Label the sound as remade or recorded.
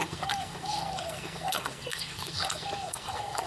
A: remade